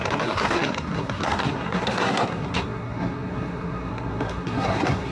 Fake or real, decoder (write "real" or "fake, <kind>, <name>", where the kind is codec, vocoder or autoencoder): fake, codec, SNAC